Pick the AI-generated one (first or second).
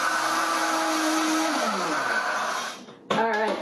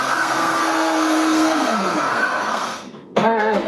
second